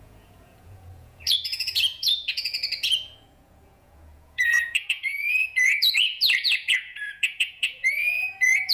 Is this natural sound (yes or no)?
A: no